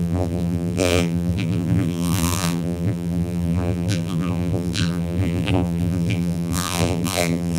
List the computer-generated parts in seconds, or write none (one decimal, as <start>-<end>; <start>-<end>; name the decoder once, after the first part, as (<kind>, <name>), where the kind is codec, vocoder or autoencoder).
0.0-7.6 (vocoder, BigVGAN v2)